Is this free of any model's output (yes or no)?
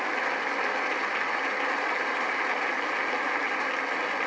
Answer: yes